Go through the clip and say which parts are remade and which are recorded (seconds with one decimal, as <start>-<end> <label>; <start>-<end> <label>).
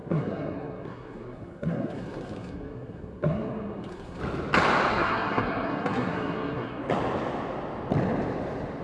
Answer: 0.0-4.2 remade; 4.2-4.9 recorded; 4.9-6.8 remade; 6.8-8.8 recorded